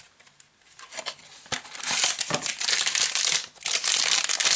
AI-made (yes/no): no